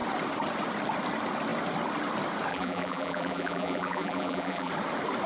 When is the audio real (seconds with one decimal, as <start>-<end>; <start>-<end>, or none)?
0.0-2.5; 4.7-5.3